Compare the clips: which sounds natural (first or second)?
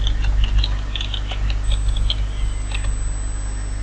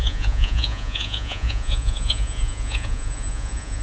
first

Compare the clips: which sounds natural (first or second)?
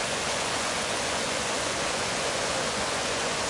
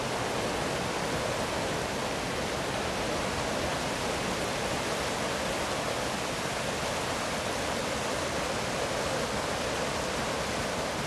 second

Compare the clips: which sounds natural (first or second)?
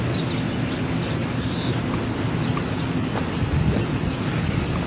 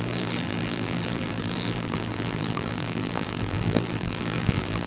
first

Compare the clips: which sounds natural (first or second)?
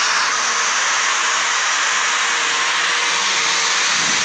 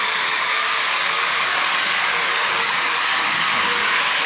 first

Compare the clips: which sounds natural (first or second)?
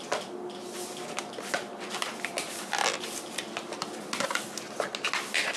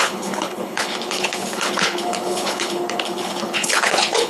first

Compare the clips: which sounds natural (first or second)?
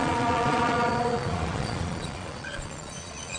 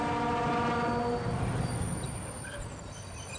second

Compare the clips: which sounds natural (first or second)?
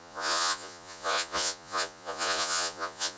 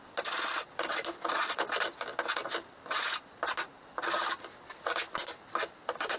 second